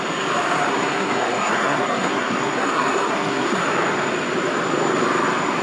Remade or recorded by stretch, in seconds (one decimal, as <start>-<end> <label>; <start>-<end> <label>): 0.0-0.7 recorded; 0.7-3.6 remade; 3.6-5.6 recorded